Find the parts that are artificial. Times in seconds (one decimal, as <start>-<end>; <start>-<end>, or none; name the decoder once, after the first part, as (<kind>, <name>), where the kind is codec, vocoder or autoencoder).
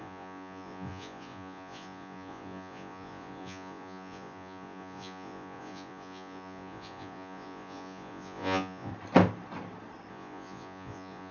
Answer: 0.0-8.9 (vocoder, Vocos); 10.1-11.3